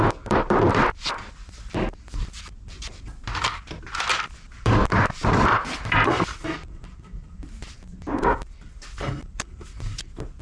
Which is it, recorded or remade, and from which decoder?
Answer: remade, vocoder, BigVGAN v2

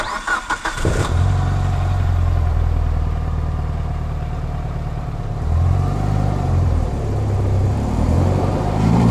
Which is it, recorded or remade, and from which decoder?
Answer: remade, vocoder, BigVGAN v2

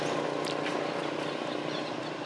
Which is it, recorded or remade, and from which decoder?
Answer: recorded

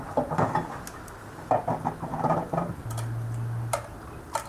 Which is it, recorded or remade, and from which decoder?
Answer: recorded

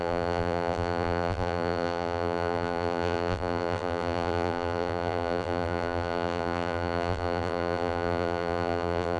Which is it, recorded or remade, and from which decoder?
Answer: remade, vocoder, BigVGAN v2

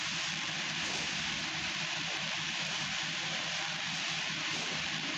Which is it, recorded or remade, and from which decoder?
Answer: remade, vocoder, BigVGAN v2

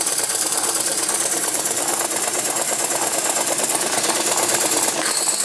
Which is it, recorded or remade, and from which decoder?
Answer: remade, vocoder, BigVGAN v2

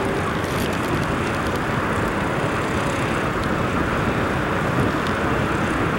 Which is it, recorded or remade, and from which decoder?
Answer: recorded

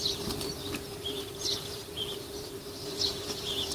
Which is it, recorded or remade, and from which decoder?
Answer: remade, vocoder, BigVGAN v2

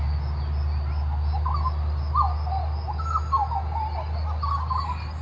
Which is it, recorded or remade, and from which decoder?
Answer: recorded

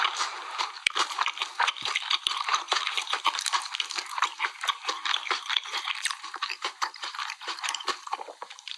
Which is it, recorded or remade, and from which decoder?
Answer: remade, vocoder, BigVGAN v2